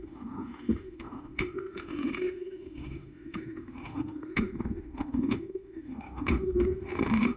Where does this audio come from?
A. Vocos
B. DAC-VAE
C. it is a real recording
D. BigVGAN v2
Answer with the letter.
B